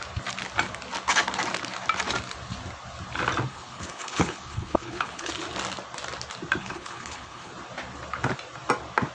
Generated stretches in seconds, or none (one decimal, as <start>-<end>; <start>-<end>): 3.5-5.3; 6.6-7.5